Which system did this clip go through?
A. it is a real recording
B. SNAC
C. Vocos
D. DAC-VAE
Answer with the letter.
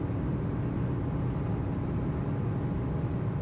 A